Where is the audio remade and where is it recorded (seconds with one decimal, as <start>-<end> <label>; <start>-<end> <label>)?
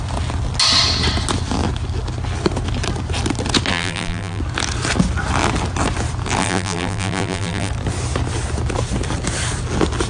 0.0-3.7 recorded; 3.7-4.4 remade; 4.4-6.4 recorded; 6.4-7.7 remade; 7.7-10.1 recorded